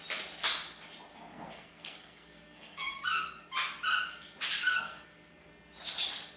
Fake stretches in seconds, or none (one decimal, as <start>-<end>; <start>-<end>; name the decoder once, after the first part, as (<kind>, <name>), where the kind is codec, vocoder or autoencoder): 1.1-3.5 (codec, SNAC); 4.6-5.5